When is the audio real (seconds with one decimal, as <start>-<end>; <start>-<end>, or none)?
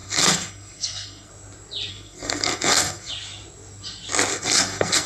1.3-1.9; 3.1-4.3